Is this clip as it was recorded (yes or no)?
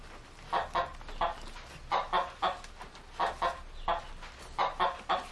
yes